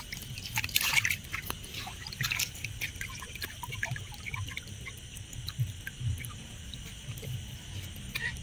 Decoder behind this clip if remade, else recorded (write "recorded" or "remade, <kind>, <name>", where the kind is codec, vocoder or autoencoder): remade, vocoder, BigVGAN v2